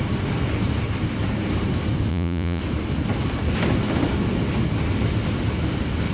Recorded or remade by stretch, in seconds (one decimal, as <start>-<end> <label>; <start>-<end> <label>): 0.0-2.1 recorded; 2.1-2.6 remade; 2.6-6.1 recorded